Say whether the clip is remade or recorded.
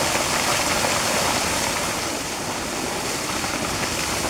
recorded